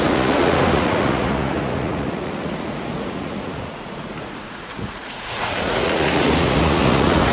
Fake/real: fake